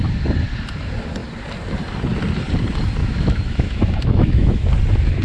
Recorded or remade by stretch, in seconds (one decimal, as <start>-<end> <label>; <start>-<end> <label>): 0.0-3.0 recorded; 3.0-4.7 remade; 4.7-5.2 recorded